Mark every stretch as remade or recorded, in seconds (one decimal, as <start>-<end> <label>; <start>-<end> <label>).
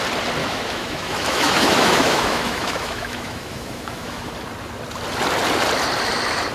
0.0-0.4 recorded; 0.4-4.3 remade; 4.3-6.5 recorded